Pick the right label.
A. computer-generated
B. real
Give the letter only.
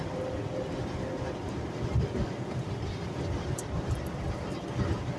B